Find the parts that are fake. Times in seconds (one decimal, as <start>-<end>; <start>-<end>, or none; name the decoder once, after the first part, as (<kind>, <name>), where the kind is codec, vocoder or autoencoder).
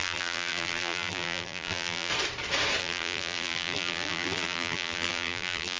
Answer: 0.0-2.1 (vocoder, BigVGAN v2); 2.8-5.8